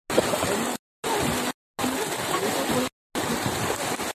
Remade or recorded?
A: recorded